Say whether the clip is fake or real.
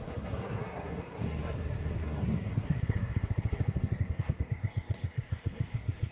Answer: fake